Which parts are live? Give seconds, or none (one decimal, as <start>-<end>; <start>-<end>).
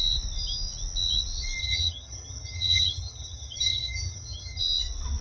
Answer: 0.0-1.6; 4.6-5.2